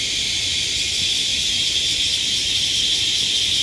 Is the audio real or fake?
real